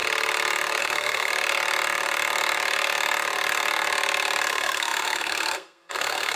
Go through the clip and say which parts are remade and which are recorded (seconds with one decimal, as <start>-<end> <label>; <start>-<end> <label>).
0.0-0.8 recorded; 0.8-1.3 remade; 1.3-4.5 recorded; 4.5-6.4 remade